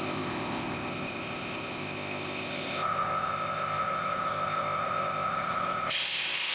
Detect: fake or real fake